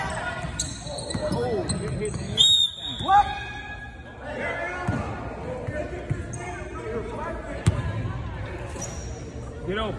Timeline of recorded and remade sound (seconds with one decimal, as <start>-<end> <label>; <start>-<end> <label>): 0.0-10.0 recorded